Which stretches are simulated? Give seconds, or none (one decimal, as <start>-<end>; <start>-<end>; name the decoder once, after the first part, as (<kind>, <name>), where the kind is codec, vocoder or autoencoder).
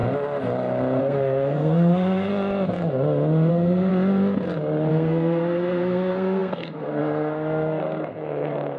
1.0-2.3 (codec, SNAC); 3.5-3.9; 4.9-8.8